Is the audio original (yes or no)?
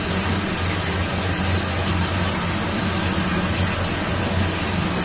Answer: yes